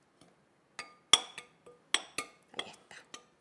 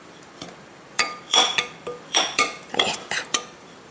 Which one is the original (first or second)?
first